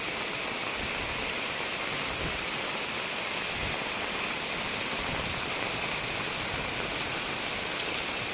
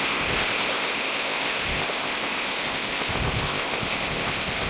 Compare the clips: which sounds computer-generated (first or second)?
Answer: second